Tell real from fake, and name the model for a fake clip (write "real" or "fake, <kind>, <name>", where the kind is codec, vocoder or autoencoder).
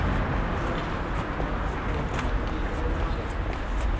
real